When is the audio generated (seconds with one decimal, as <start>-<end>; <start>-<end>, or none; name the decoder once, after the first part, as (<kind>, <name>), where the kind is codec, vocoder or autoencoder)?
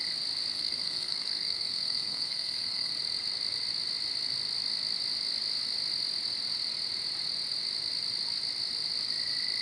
0.5-2.9 (codec, SNAC)